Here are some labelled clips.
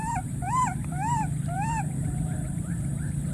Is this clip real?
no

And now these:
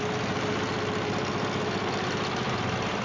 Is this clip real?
yes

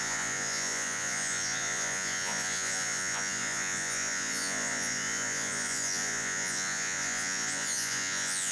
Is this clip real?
no